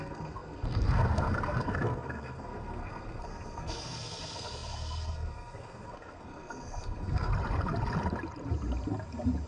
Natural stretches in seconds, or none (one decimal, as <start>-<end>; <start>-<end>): 7.3-9.5